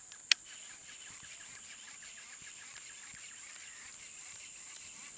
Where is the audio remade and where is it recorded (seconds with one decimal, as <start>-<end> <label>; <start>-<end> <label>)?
0.0-4.2 recorded; 4.2-5.2 remade